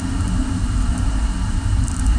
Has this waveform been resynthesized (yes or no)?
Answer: no